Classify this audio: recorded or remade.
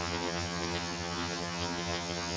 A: remade